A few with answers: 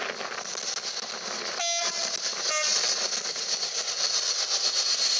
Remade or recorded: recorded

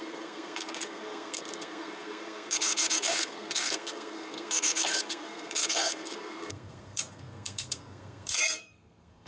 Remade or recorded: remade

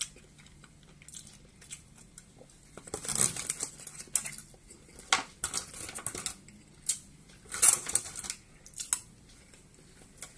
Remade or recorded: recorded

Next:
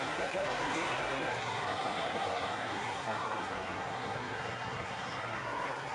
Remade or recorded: remade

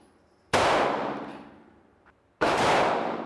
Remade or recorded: remade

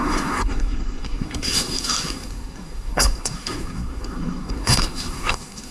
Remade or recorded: remade